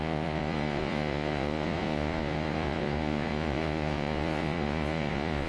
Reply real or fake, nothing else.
fake